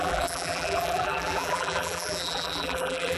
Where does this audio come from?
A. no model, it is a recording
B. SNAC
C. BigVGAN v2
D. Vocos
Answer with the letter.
C